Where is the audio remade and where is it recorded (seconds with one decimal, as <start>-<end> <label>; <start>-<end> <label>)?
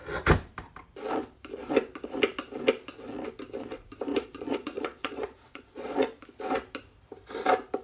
0.0-4.1 recorded; 4.1-6.2 remade; 6.2-7.8 recorded